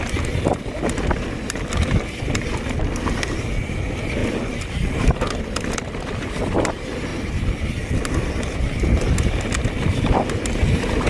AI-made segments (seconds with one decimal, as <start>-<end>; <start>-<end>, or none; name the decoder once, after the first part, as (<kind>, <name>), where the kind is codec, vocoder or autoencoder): none